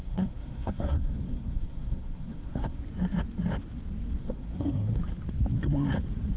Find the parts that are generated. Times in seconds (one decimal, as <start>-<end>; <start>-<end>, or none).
0.0-2.8; 4.2-5.0